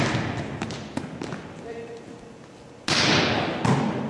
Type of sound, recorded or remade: recorded